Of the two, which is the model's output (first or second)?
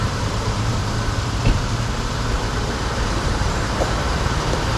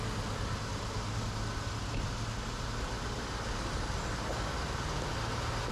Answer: first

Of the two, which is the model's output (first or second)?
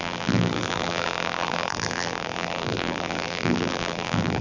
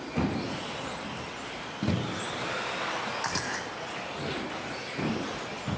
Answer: first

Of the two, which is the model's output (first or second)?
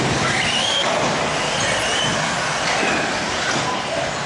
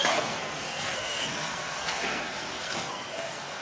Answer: second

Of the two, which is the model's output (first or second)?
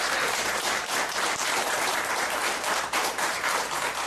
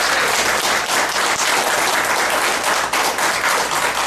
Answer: first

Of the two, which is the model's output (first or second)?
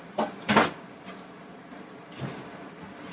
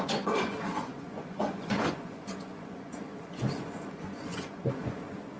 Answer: second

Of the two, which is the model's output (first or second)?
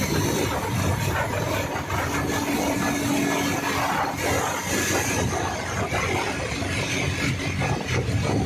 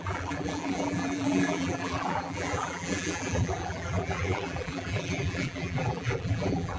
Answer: second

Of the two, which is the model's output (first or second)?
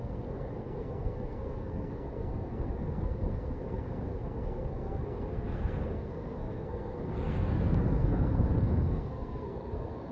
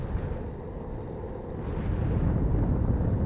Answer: first